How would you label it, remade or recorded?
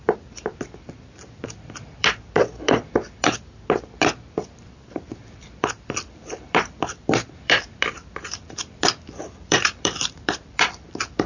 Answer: remade